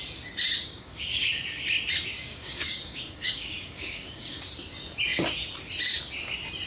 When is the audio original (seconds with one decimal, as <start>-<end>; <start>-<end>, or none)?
0.0-0.6; 1.3-2.3; 4.4-6.7